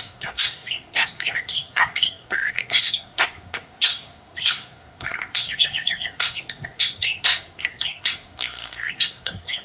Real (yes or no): no